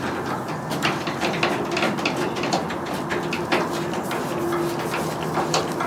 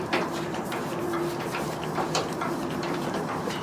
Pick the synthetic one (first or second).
second